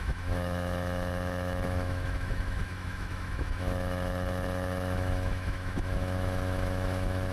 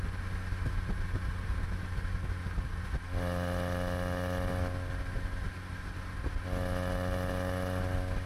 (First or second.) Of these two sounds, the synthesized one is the first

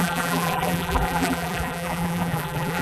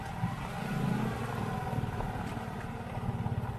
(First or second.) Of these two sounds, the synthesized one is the first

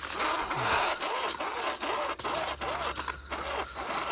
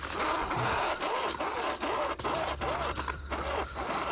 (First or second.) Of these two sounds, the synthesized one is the second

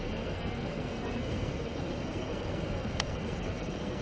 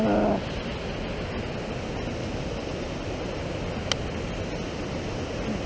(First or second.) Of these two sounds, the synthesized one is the first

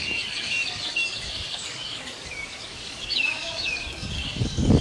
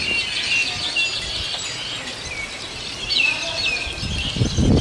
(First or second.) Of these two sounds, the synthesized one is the first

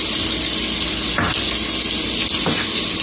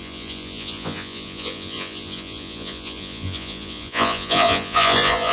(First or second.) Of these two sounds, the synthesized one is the second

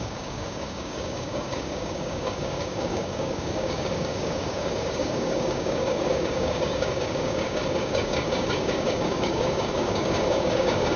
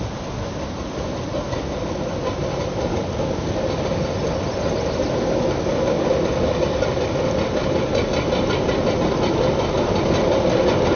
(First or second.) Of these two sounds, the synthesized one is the first